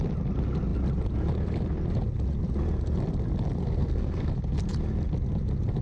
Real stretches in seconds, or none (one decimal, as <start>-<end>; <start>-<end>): 0.0-3.6; 4.3-5.8